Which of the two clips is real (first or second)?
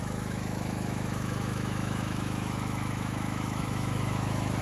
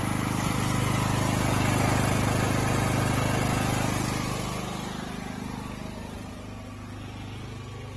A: second